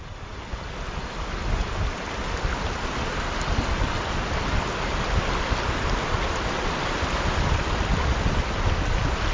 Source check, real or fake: real